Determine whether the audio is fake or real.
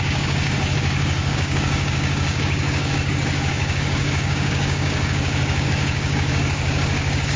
fake